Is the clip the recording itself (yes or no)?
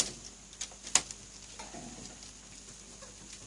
yes